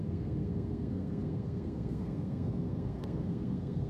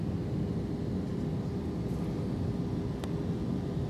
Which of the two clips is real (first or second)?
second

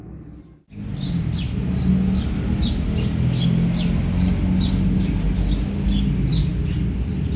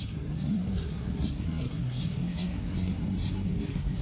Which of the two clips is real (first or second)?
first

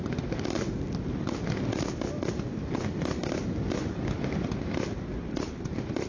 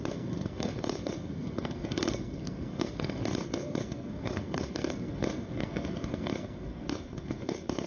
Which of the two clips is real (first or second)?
first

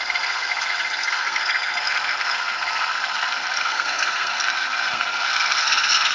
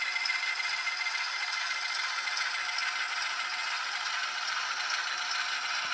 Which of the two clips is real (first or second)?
second